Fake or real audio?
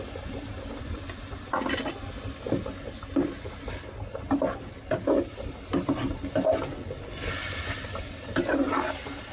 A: real